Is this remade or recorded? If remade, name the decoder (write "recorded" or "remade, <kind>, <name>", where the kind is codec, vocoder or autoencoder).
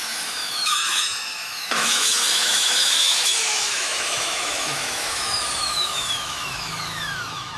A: remade, autoencoder, DAC-VAE